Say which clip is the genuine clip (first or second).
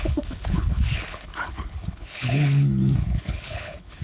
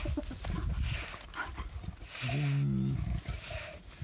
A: second